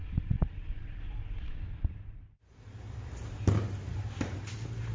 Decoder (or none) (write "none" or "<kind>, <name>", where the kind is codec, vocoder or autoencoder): vocoder, BigVGAN v2